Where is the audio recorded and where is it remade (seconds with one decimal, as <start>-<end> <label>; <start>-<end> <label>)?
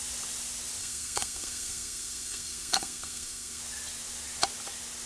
0.0-0.8 recorded; 0.8-3.6 remade; 3.6-5.1 recorded